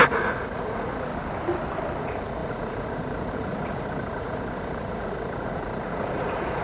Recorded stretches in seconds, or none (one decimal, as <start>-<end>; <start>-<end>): 1.1-2.0

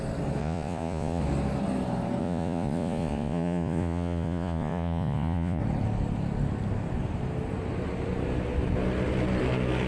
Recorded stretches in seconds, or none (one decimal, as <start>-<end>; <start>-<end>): 0.0-0.4; 1.2-2.2; 5.6-9.9

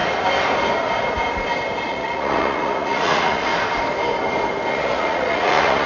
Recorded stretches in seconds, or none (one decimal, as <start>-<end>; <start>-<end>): 0.0-1.9; 3.5-4.7

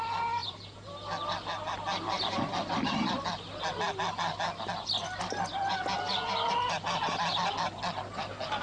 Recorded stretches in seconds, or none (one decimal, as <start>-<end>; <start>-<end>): 0.0-0.4; 0.9-8.6

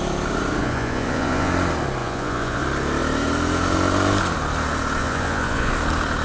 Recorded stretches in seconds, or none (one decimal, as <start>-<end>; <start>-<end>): 0.0-0.6; 1.5-2.0; 2.6-5.0; 5.7-6.2

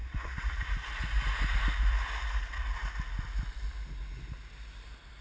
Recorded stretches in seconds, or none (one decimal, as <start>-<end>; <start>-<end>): 0.7-5.2